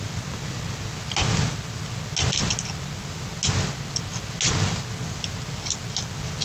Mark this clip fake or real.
real